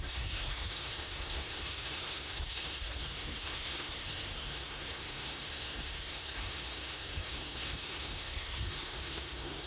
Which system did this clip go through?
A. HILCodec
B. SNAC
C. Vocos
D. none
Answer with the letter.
B